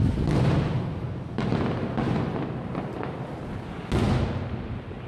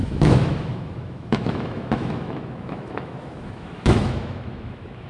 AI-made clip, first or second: second